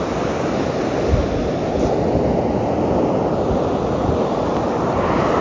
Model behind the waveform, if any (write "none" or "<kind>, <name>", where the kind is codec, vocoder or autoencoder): none